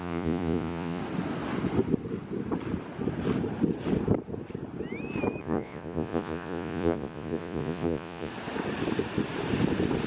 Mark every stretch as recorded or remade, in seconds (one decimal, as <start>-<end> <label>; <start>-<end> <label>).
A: 0.0-1.0 remade; 1.0-5.4 recorded; 5.4-8.3 remade; 8.3-10.1 recorded